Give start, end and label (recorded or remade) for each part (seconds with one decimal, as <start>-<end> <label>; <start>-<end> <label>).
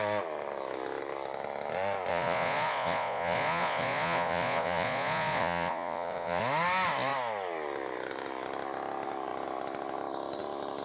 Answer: 0.0-2.1 recorded; 2.1-6.4 remade; 6.4-10.8 recorded